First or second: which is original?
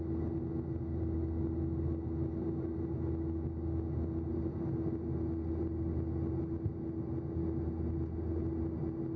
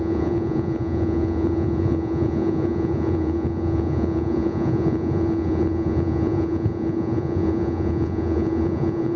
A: first